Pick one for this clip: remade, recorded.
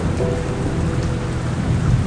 recorded